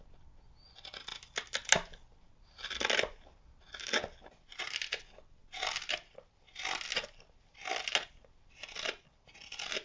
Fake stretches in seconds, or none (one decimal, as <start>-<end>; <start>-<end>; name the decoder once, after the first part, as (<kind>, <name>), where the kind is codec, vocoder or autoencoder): none